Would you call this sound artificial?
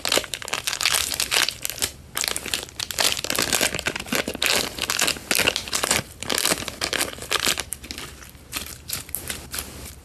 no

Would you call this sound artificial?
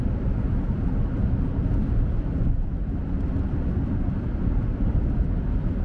yes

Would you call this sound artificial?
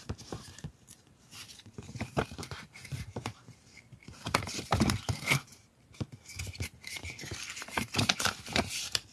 yes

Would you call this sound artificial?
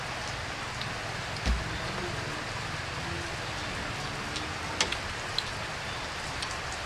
no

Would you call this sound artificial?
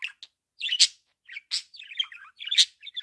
no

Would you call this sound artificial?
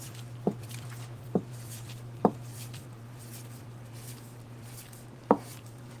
yes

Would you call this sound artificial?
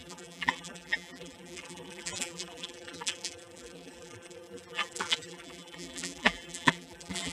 yes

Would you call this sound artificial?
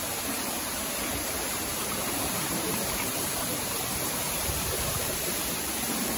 yes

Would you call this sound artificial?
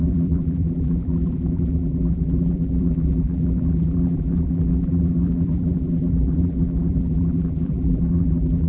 yes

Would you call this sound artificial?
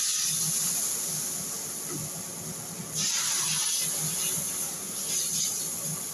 no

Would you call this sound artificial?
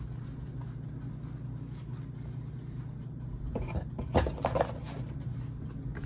no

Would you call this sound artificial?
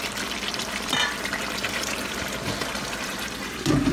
yes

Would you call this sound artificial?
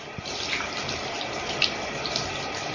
no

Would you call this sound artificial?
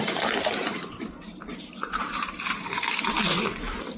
yes